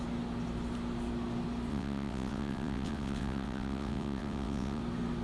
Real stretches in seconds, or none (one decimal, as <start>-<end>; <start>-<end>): 0.0-1.7; 4.8-5.2